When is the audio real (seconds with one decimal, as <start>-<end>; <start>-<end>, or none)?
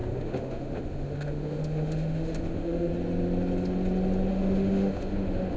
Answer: 2.9-4.3